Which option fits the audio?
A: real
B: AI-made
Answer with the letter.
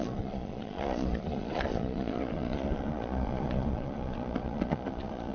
B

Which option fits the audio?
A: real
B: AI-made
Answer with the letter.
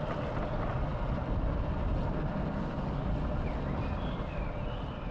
A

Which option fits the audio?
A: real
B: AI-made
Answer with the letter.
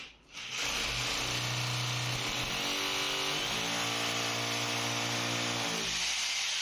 A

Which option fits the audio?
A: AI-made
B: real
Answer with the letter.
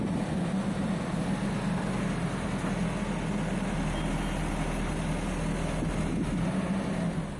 B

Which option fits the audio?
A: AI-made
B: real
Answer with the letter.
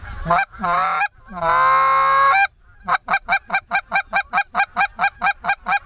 B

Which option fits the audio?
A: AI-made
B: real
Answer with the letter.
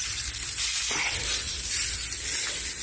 B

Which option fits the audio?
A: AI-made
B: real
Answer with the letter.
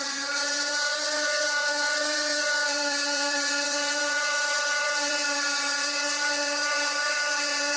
A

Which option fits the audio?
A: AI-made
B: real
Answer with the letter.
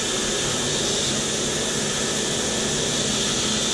B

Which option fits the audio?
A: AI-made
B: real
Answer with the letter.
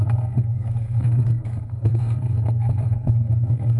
A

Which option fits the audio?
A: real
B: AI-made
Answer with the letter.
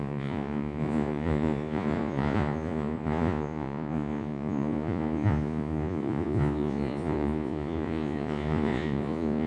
B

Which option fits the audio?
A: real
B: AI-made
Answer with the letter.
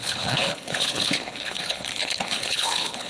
B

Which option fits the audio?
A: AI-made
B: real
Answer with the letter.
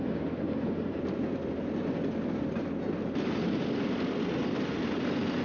B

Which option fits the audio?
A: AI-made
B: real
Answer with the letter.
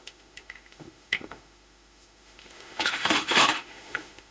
A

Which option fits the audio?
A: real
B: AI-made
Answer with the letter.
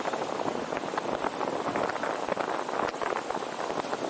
A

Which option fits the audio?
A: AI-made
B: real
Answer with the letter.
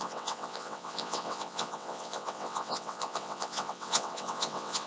A